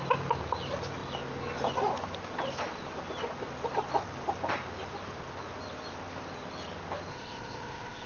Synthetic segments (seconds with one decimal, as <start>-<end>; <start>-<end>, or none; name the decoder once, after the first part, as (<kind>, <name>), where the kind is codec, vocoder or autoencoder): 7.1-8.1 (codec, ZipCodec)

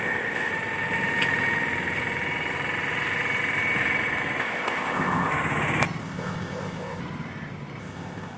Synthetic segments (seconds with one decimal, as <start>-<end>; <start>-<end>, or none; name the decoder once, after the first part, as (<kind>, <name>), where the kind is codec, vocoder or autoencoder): 0.0-0.5 (codec, ZipCodec); 4.4-5.3; 6.0-7.0; 7.8-8.4

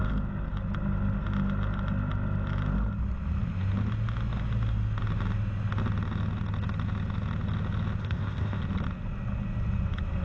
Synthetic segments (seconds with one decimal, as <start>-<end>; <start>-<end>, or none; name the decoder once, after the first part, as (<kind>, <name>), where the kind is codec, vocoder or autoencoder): 8.0-8.6 (codec, ZipCodec)

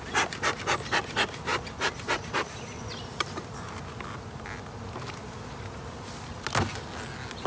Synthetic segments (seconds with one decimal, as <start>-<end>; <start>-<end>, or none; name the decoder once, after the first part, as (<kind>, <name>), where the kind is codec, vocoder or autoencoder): none

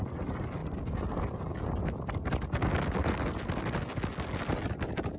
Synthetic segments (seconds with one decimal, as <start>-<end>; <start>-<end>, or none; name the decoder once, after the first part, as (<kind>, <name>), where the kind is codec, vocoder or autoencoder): none